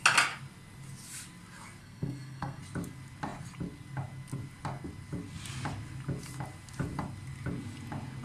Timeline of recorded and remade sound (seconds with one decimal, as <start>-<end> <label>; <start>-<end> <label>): 0.0-1.8 recorded; 1.8-2.6 remade; 2.6-8.2 recorded